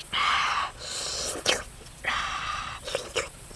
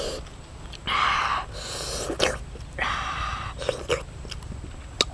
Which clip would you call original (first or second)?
second